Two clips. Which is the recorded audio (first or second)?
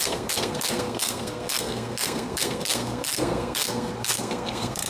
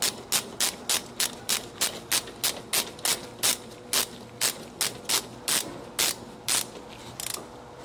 second